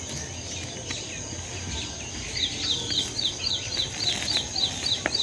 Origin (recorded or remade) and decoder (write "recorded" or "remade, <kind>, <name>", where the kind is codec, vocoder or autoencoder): recorded